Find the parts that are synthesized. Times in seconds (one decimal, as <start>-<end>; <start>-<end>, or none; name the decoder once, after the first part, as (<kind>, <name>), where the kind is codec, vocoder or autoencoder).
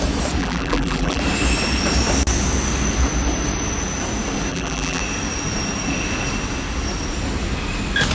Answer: 0.4-1.2 (vocoder, BigVGAN v2); 4.5-5.0